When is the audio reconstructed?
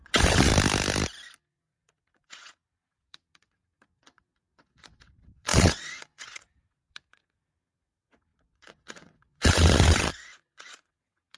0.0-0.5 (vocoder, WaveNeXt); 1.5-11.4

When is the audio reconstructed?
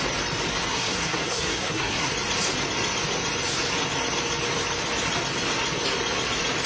0.7-2.1 (codec, SNAC)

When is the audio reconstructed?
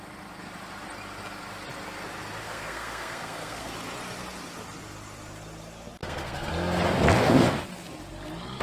2.4-3.7 (codec, SNAC); 6.0-6.5